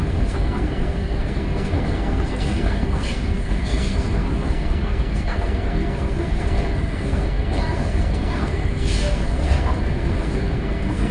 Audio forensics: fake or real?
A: fake